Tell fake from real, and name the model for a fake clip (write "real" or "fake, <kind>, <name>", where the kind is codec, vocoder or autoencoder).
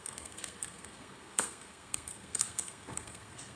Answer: fake, codec, SNAC